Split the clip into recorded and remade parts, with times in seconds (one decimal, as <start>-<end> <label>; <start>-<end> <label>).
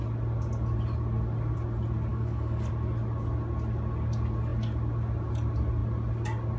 0.0-2.1 recorded; 2.1-2.7 remade; 2.7-6.6 recorded